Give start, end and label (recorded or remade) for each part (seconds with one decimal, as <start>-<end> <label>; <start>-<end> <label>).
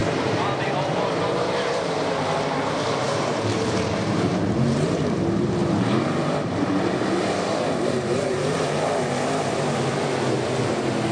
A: 0.0-5.0 remade; 5.0-5.6 recorded; 5.6-8.8 remade; 8.8-11.1 recorded